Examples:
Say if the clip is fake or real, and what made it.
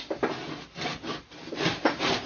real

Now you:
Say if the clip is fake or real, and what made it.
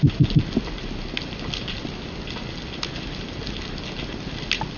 real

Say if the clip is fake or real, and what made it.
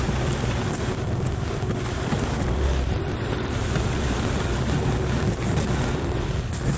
real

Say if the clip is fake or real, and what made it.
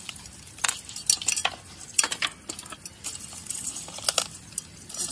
real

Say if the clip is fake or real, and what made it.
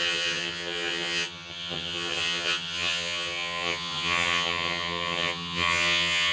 fake, vocoder, HiFi-GAN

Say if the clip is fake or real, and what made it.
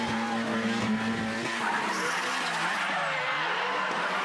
real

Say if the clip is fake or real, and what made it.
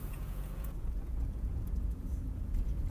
fake, vocoder, Vocos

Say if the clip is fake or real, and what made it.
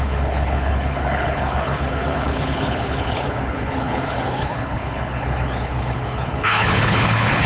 fake, codec, HILCodec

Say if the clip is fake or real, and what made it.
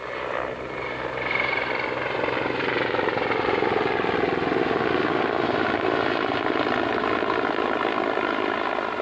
real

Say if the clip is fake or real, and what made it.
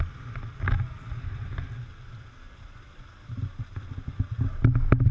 real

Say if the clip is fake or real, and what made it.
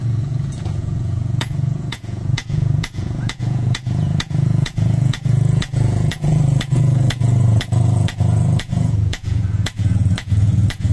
fake, vocoder, Vocos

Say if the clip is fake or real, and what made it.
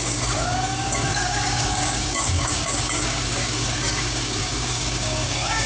fake, codec, DAC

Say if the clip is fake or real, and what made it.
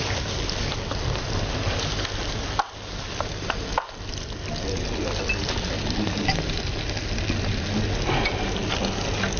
real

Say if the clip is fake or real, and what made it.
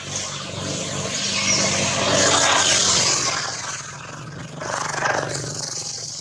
real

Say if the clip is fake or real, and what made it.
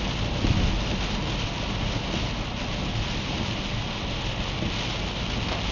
real